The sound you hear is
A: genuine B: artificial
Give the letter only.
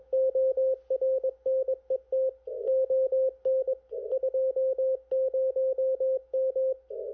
A